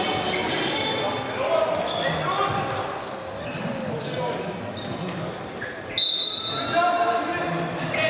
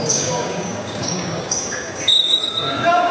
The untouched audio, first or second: first